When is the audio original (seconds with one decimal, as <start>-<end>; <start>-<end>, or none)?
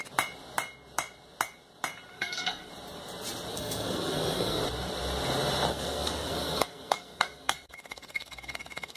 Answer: 0.0-2.1; 2.7-3.5; 4.6-5.7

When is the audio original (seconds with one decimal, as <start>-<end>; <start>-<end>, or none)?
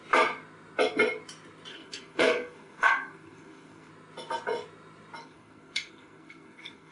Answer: 0.0-1.7; 3.9-5.2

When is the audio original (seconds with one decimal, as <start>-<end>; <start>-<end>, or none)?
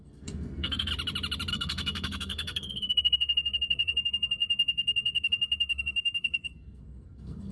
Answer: 0.9-1.5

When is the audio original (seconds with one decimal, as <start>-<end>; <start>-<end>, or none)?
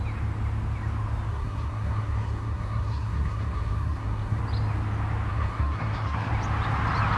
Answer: 0.0-1.3; 4.4-5.3; 6.3-7.2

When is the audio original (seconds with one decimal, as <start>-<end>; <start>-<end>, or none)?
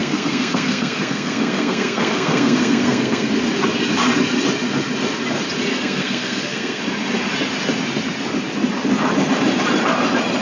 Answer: 3.3-5.7; 6.8-10.4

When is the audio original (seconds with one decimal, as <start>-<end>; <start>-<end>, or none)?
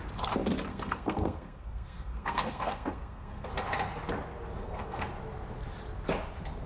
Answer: 0.0-0.7; 3.5-4.6; 5.1-6.7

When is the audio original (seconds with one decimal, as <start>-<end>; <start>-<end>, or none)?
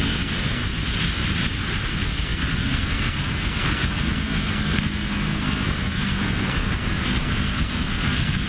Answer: 0.6-1.9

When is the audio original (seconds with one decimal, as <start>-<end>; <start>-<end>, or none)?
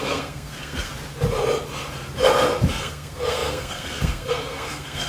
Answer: 0.9-2.7